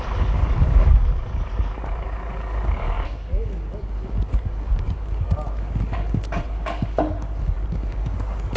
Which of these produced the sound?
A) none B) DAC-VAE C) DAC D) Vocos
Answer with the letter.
C